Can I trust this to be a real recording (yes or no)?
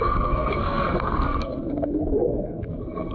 no